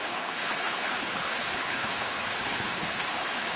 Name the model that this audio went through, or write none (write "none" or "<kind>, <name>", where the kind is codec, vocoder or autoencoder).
codec, HILCodec